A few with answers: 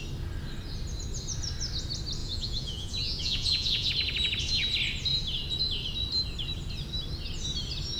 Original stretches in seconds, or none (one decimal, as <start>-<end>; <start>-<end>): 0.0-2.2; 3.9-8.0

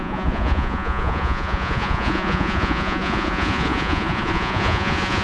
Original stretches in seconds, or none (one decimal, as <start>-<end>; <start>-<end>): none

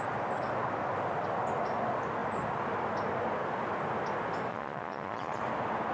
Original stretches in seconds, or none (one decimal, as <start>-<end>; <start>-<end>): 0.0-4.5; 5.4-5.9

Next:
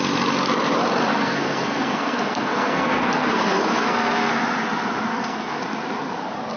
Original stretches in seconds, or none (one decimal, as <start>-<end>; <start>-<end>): 0.0-1.1; 4.3-5.1; 5.6-6.6

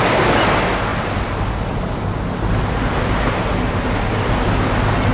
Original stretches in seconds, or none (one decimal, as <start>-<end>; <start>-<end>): 0.0-5.1

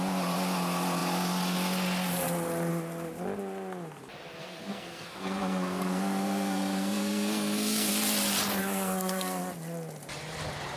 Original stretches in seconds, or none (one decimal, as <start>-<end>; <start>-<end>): 0.0-4.4; 7.9-8.6; 9.4-10.8

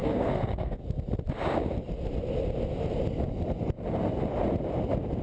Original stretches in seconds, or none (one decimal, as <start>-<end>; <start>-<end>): 0.8-5.2

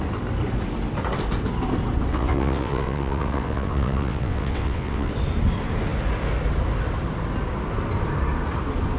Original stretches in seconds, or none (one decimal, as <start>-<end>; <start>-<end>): 0.0-2.1; 5.1-9.0